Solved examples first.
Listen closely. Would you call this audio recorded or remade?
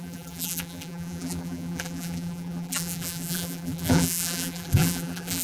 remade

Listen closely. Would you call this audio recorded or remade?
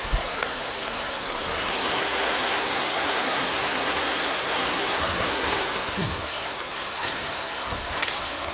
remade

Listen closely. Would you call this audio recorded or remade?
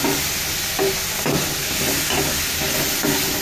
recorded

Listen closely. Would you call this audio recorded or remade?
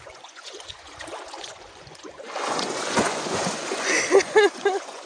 remade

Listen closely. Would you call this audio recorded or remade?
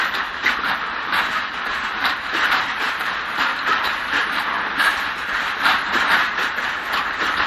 remade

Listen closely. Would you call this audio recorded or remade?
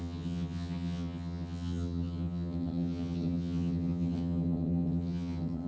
remade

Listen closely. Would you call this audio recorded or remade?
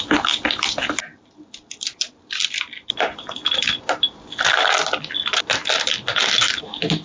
recorded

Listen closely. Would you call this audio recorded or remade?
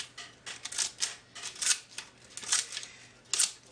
recorded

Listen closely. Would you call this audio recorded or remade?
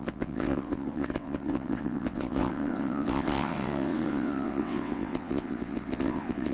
remade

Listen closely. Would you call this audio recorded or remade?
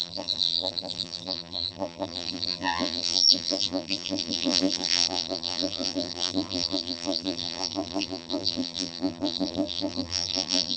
remade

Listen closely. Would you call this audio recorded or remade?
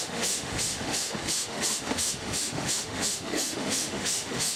remade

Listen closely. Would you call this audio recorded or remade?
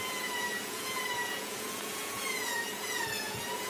remade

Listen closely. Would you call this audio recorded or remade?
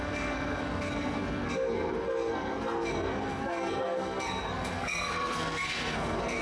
remade